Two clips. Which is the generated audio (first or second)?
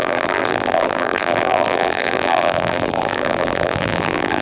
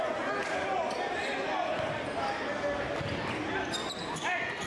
first